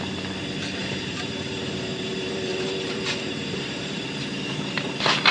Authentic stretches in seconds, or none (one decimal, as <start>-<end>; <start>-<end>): 0.0-0.8; 4.0-5.3